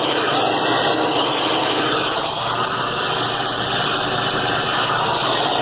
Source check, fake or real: real